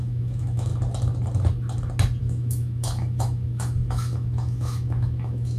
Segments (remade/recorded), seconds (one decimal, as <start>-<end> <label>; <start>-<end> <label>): 0.0-0.7 remade; 0.7-2.2 recorded; 2.2-5.6 remade